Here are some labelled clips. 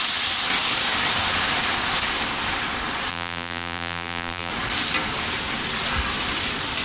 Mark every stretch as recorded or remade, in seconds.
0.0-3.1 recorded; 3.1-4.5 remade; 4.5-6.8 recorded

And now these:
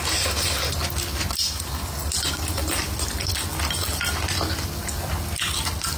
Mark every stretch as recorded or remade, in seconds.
0.0-2.0 recorded; 2.0-3.3 remade; 3.3-6.0 recorded

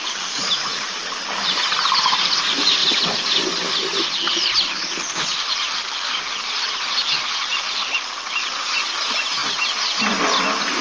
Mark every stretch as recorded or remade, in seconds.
0.0-10.8 recorded

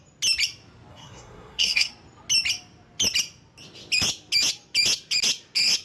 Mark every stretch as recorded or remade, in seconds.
0.0-0.9 recorded; 0.9-1.9 remade; 1.9-5.8 recorded

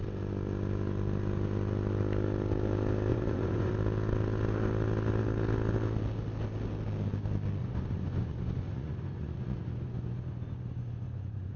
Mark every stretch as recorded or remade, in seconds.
0.0-3.1 recorded; 3.1-3.7 remade; 3.7-7.6 recorded; 7.6-11.6 remade

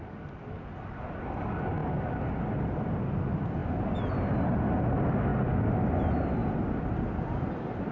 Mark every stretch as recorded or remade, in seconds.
0.0-6.4 recorded; 6.4-7.5 remade; 7.5-7.9 recorded

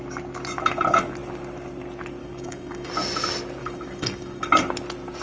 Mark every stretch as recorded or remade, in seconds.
0.0-2.2 recorded; 2.2-2.9 remade; 2.9-3.6 recorded; 3.6-4.4 remade; 4.4-5.2 recorded

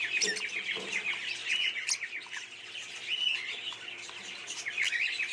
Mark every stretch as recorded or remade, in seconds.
0.0-5.3 recorded